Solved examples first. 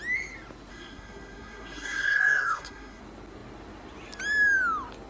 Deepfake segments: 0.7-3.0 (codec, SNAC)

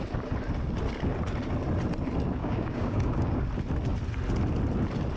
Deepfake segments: 2.4-3.5 (codec, DAC)

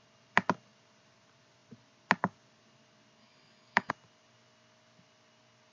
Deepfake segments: 3.2-3.9 (codec, DAC)

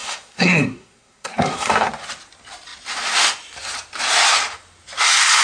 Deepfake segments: 0.0-1.9 (codec, SNAC)

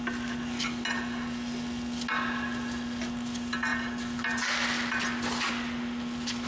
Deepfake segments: none

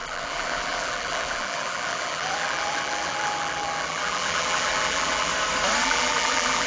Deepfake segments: 0.0-5.3 (vocoder, BigVGAN v2); 5.8-6.7

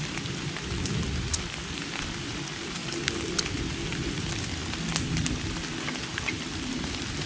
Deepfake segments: 0.0-4.6 (vocoder, BigVGAN v2); 5.1-7.3